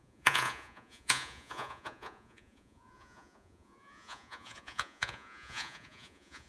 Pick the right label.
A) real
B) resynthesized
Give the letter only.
B